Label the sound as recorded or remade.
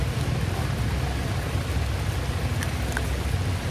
recorded